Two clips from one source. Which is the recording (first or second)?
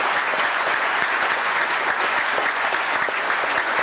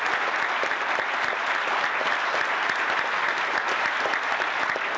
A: second